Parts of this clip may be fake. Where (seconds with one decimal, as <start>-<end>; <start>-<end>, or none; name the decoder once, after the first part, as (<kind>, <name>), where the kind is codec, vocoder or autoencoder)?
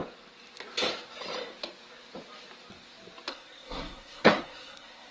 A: 3.3-5.1 (codec, SNAC)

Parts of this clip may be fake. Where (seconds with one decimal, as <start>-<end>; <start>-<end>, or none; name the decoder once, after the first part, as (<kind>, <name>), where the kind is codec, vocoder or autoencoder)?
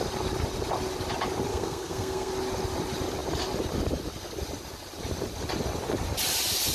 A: 1.5-2.3 (codec, SNAC)